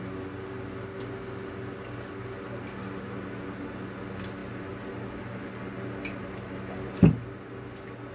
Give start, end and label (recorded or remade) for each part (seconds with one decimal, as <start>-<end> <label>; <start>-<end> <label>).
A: 0.0-8.1 recorded